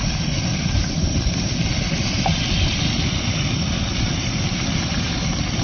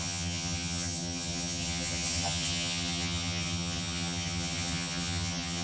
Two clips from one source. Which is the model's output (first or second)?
second